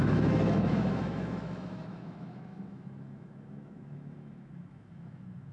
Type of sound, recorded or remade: remade